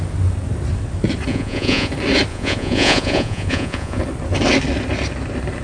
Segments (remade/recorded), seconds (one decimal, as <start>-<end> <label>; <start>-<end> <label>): 0.0-1.3 recorded; 1.3-1.9 remade; 1.9-2.3 recorded; 2.3-4.0 remade; 4.0-5.6 recorded

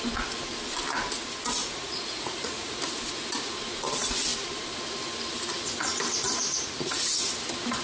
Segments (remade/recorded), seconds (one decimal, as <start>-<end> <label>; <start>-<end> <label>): 0.0-1.6 recorded; 1.6-2.8 remade; 2.8-7.8 recorded

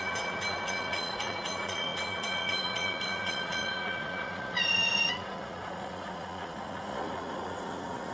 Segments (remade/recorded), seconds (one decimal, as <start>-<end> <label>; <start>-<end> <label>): 0.0-8.1 remade

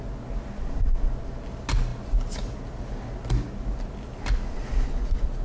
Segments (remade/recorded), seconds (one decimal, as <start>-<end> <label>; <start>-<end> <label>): 0.0-5.4 recorded

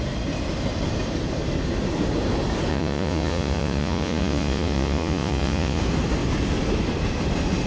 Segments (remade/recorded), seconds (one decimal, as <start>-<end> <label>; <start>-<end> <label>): 0.0-2.7 recorded; 2.7-5.8 remade; 5.8-7.7 recorded

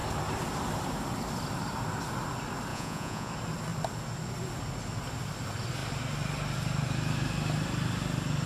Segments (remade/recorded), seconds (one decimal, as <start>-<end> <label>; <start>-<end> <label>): 0.0-2.7 recorded; 2.7-3.3 remade; 3.3-8.5 recorded